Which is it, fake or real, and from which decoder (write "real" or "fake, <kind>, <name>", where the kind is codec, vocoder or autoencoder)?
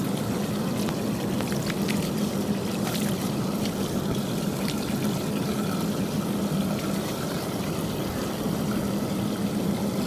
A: real